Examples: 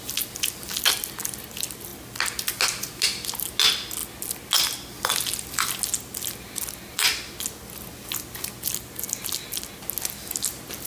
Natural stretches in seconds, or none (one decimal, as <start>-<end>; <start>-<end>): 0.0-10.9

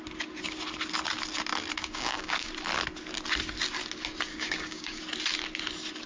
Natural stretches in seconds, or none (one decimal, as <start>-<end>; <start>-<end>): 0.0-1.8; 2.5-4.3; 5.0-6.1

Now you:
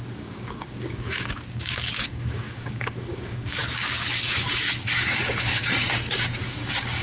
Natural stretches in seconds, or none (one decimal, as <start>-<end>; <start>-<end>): none